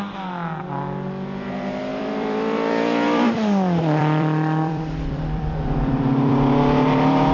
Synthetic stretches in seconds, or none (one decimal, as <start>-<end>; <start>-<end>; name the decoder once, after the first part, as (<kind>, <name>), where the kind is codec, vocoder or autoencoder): 1.9-6.3 (vocoder, BigVGAN v2)